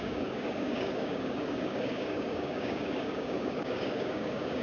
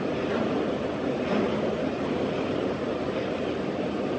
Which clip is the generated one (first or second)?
first